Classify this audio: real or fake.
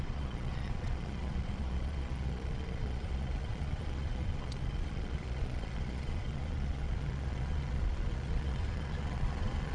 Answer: fake